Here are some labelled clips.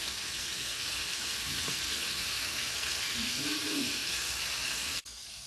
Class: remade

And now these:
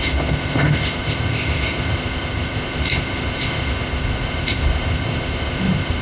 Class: remade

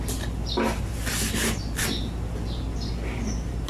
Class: recorded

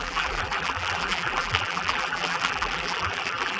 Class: remade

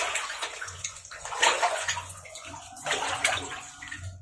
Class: remade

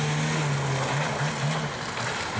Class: recorded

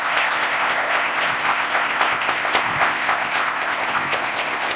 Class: remade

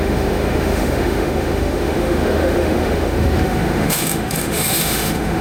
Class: remade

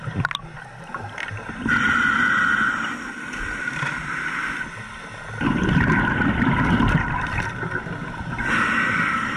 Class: recorded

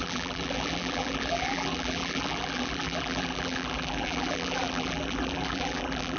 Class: remade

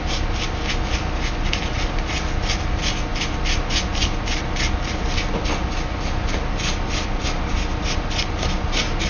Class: recorded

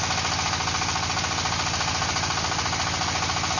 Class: recorded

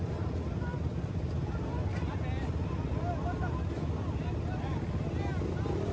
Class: recorded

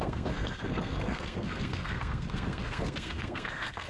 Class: remade